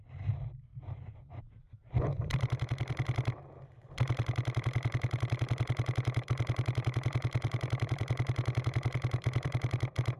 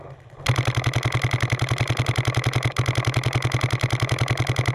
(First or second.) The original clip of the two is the second